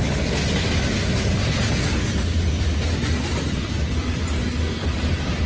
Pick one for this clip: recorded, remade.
recorded